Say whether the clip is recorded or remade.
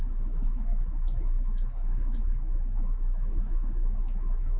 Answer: remade